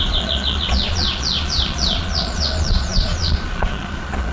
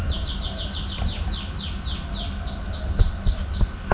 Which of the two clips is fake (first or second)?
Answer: first